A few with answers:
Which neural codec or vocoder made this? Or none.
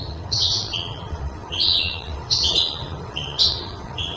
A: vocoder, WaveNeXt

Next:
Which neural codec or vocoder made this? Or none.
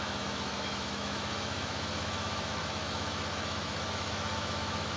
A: autoencoder, DAC-VAE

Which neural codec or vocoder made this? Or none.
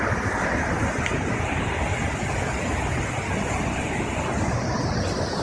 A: none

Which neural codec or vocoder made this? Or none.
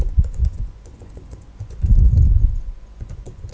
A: vocoder, Vocos